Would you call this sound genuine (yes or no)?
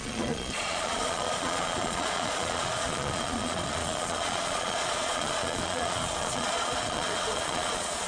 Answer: no